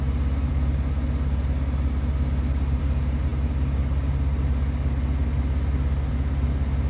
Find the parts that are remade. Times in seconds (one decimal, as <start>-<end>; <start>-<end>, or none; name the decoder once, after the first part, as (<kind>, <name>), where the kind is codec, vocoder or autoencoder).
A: none